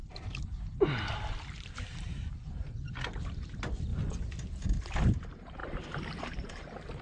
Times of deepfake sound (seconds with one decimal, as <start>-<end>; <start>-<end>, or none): 0.0-3.9; 4.7-7.0